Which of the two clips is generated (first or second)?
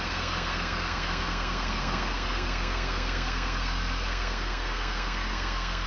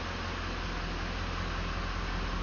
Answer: first